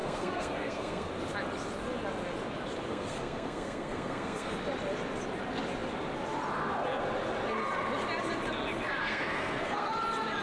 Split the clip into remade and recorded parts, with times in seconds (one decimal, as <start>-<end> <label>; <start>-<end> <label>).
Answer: 0.0-1.1 remade; 1.1-2.9 recorded; 2.9-4.5 remade; 4.5-9.0 recorded; 9.0-9.9 remade; 9.9-10.4 recorded